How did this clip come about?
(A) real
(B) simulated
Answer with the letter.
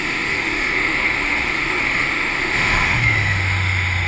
B